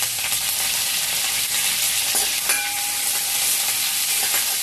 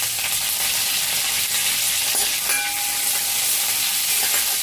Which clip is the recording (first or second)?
second